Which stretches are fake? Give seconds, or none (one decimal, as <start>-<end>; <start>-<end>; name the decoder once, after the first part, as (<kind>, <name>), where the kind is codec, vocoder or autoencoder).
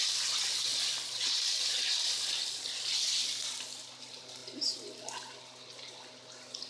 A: 0.7-2.6 (vocoder, BigVGAN v2)